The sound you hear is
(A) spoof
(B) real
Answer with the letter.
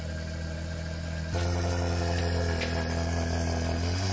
B